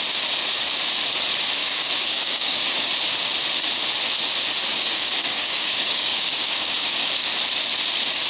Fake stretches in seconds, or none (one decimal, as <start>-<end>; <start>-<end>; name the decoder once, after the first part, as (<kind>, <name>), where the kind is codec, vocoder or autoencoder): 1.6-2.9 (codec, DAC); 4.7-7.1